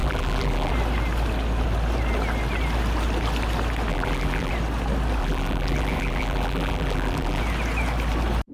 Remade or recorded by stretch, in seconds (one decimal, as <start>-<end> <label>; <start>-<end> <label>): 0.0-0.7 remade; 0.7-3.9 recorded; 3.9-4.5 remade; 4.5-5.2 recorded; 5.2-7.4 remade; 7.4-8.5 recorded